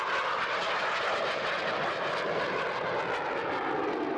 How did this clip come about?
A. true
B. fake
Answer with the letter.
A